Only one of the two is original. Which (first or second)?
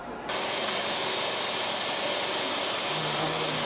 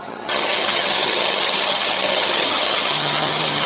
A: first